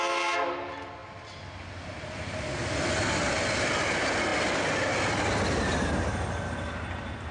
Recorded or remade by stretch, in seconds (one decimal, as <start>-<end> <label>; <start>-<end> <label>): 0.0-7.3 recorded